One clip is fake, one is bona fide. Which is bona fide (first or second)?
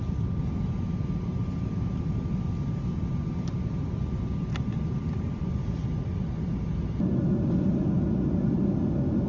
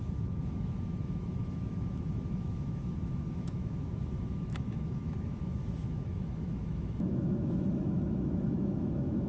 first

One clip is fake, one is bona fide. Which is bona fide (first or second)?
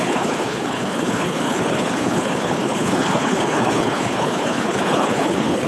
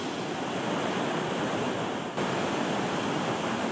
second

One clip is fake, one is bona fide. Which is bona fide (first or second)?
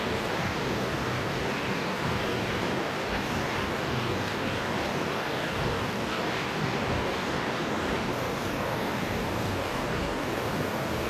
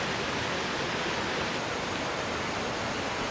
second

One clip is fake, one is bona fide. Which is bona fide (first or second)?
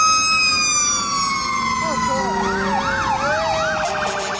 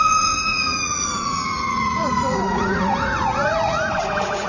first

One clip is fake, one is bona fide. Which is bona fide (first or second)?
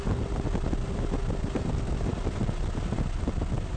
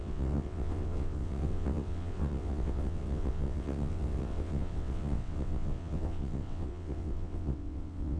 first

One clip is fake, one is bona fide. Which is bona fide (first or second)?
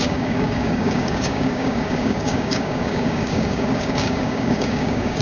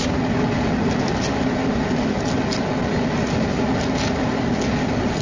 second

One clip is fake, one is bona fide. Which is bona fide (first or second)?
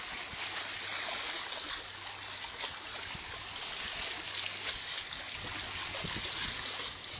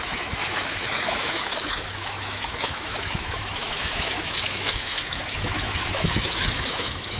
first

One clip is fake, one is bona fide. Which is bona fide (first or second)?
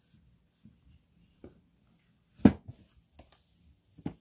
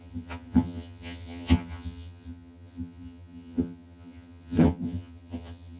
first